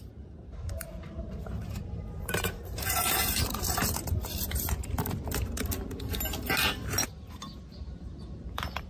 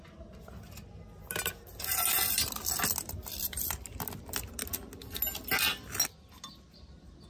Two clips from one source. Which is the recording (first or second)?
second